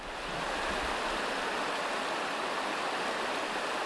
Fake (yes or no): no